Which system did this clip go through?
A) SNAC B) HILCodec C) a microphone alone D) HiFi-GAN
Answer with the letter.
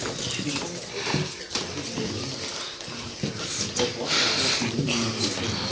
C